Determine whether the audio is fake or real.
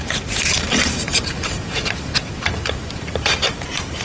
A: fake